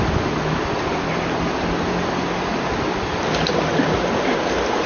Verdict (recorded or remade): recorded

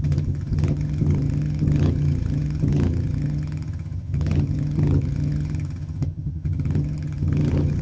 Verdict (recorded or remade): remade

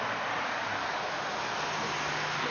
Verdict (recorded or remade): recorded